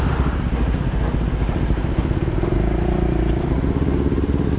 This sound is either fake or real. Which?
real